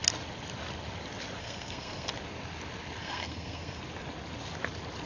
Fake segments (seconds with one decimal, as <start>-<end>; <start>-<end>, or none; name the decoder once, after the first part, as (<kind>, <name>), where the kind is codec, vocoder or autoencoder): 1.4-2.1 (codec, SNAC); 3.0-3.8